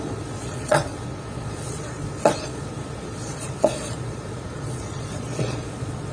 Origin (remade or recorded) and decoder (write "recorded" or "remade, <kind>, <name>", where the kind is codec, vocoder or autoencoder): remade, vocoder, Vocos